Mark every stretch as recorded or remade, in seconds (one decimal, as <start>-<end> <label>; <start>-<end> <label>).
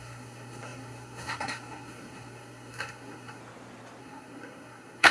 0.0-3.4 remade; 3.4-4.0 recorded; 4.0-5.1 remade